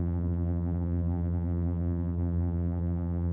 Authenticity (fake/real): fake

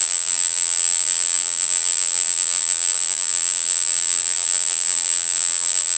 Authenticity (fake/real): fake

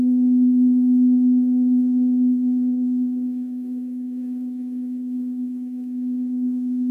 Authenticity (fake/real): fake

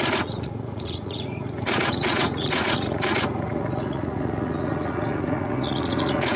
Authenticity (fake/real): fake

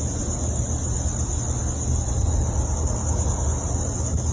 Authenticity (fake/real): real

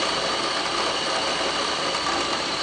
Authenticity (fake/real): real